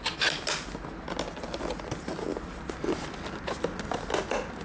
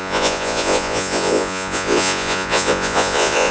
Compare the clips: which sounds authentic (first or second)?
first